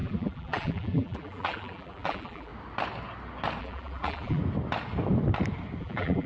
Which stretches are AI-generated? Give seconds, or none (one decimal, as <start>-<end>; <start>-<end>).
0.0-2.5; 3.6-4.4; 5.8-6.3